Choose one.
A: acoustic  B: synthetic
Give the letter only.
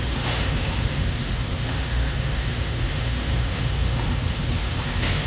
B